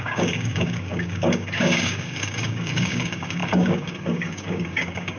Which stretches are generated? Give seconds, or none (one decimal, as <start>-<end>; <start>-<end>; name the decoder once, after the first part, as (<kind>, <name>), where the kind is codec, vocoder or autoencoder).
0.0-5.2 (codec, DAC)